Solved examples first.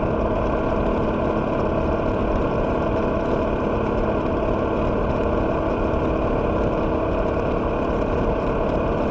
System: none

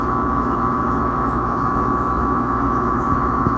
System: autoencoder, DAC-VAE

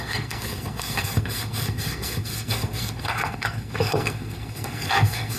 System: codec, SNAC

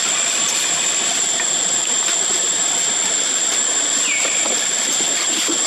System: vocoder, BigVGAN v2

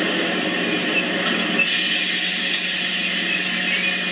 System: none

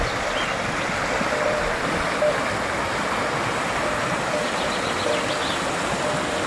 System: none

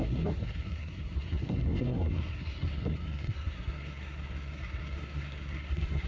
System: codec, SNAC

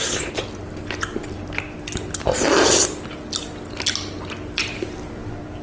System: none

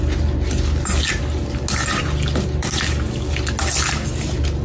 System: none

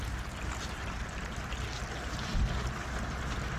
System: none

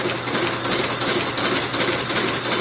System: none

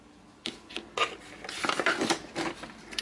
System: none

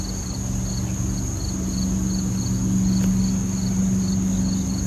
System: none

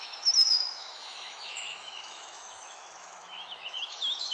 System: autoencoder, DAC-VAE